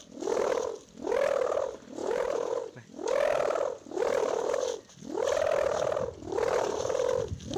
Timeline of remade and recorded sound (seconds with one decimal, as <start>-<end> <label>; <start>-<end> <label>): 0.0-2.0 recorded; 2.0-2.6 remade; 2.6-7.6 recorded

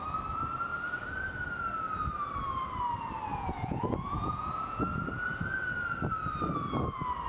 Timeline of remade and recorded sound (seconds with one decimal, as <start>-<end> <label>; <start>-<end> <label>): 0.0-3.3 recorded; 3.3-4.8 remade; 4.8-7.3 recorded

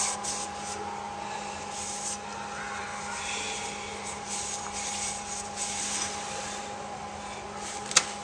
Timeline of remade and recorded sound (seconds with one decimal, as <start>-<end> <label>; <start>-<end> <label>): 0.0-8.2 recorded

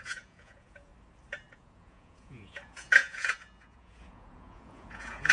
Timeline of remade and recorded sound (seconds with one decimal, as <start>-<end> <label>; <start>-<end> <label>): 0.0-0.9 remade; 0.9-1.5 recorded; 1.5-5.3 remade

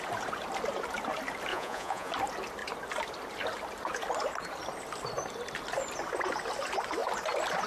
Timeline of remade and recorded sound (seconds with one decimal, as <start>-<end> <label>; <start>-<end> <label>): 0.0-1.5 recorded; 1.5-2.1 remade; 2.1-7.7 recorded

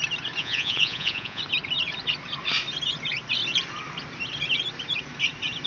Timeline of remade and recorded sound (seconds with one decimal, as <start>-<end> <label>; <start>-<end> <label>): 0.0-0.4 recorded; 0.4-1.4 remade; 1.4-5.7 recorded

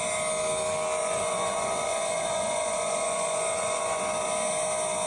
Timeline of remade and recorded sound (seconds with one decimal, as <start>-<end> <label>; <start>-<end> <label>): 0.0-1.0 recorded; 1.0-4.0 remade; 4.0-5.1 recorded